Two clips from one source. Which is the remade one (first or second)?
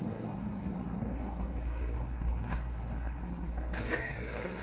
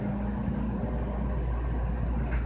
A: first